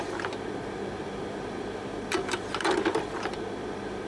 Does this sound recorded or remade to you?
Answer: recorded